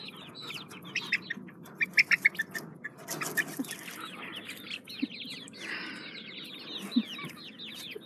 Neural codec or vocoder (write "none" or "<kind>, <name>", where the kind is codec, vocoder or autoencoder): none